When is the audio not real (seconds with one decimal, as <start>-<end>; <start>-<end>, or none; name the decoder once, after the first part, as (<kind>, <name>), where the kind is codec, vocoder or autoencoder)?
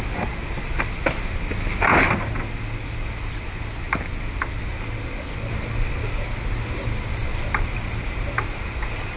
7.3-9.2 (vocoder, BigVGAN v2)